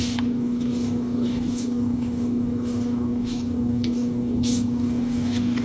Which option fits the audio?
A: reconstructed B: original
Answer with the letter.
A